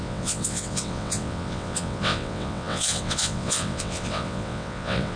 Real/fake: fake